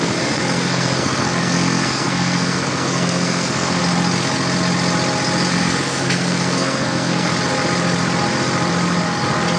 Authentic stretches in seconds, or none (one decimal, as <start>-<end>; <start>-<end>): 3.8-5.5; 7.3-9.6